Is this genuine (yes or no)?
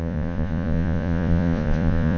no